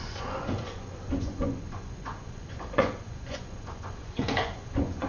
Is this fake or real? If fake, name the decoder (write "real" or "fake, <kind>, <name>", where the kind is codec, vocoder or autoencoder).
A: fake, vocoder, Vocos